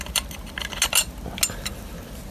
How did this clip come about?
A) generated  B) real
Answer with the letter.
B